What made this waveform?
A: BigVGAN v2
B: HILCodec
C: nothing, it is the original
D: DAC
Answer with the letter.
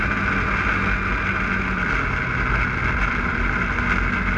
C